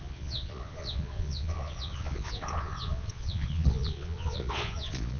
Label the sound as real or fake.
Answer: fake